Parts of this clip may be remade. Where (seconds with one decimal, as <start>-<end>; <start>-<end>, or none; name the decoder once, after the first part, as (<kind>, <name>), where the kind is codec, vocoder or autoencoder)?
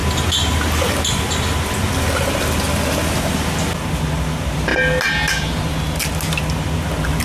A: none